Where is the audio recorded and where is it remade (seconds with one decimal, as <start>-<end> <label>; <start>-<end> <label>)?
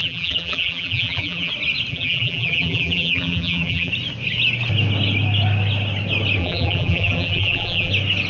0.0-1.5 remade; 1.5-1.9 recorded; 1.9-3.9 remade; 3.9-6.4 recorded; 6.4-7.9 remade; 7.9-8.3 recorded